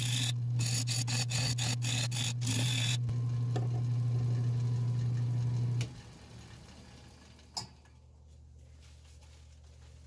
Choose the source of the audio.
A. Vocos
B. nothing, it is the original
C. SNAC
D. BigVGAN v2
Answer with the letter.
B